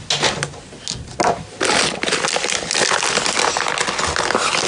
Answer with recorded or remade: recorded